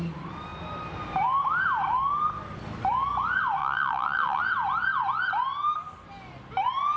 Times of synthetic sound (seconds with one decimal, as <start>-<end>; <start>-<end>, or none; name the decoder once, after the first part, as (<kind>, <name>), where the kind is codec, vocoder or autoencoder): 3.6-4.4 (vocoder, WaveNeXt)